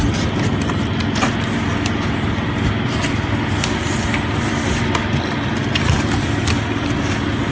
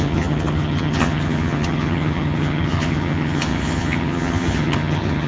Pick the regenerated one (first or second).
second